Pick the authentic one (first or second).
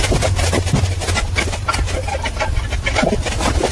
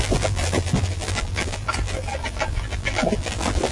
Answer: first